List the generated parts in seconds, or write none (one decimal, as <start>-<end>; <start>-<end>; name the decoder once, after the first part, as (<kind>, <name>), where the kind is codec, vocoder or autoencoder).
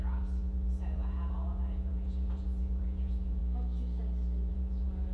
0.0-3.4 (vocoder, Vocos); 4.5-5.1